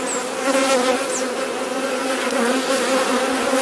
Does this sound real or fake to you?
real